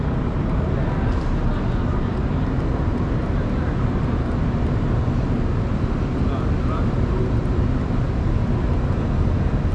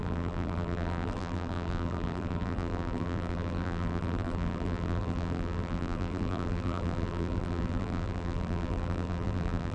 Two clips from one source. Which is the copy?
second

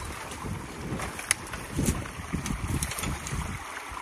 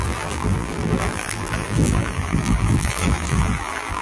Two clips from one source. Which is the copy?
second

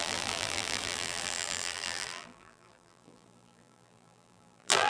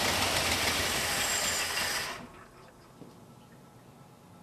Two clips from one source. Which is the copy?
first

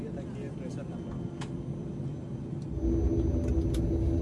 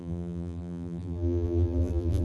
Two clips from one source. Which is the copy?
second